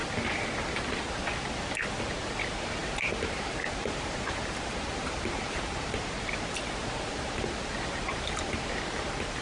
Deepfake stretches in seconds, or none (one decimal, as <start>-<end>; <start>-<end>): 2.8-6.6